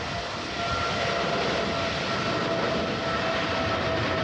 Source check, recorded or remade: recorded